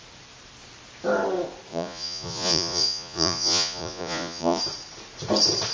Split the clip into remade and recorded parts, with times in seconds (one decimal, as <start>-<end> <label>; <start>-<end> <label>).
0.0-1.7 recorded; 1.7-4.6 remade; 4.6-5.7 recorded